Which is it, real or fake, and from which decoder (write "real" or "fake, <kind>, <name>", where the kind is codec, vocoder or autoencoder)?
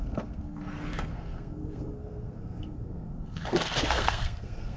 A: fake, codec, SNAC